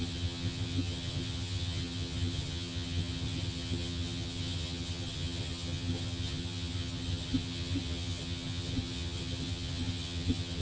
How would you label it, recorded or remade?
remade